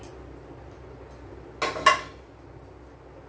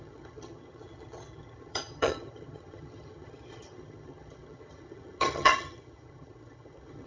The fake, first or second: second